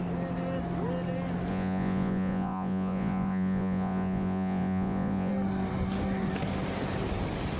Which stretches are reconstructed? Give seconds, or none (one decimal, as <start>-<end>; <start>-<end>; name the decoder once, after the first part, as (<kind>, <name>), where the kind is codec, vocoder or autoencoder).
1.5-5.3 (vocoder, Vocos)